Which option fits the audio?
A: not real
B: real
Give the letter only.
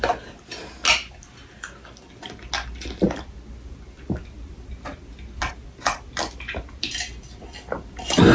B